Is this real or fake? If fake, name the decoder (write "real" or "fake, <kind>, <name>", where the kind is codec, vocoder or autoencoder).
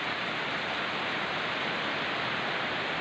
real